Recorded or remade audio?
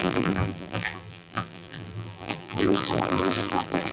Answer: remade